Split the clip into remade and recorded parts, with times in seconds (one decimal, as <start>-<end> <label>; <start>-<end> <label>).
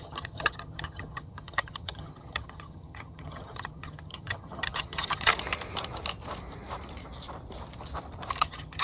0.0-5.3 remade; 5.3-8.4 recorded; 8.4-8.8 remade